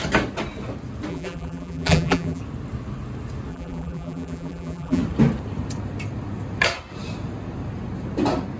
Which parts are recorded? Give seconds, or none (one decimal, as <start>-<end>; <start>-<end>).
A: 0.0-1.1; 2.4-3.5; 5.0-8.6